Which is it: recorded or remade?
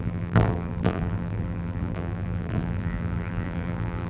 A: remade